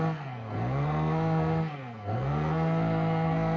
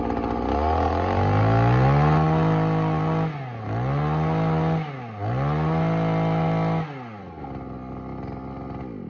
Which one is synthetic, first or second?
first